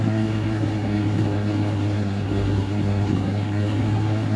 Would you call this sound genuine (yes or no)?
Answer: no